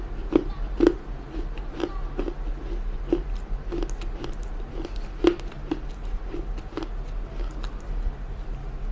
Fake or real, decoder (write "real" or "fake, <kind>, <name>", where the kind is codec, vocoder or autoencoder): real